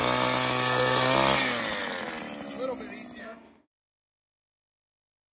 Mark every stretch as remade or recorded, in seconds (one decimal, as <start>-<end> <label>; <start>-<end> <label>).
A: 0.0-3.2 recorded; 3.2-5.3 remade